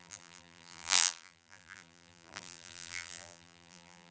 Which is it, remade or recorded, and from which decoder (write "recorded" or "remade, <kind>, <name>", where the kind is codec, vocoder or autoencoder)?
remade, vocoder, BigVGAN v2